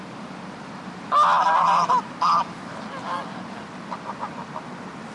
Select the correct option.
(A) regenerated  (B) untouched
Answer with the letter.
B